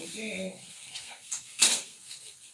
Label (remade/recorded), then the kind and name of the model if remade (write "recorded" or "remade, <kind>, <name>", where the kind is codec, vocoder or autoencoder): remade, codec, SNAC